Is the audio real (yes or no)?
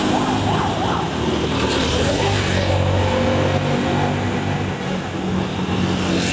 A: yes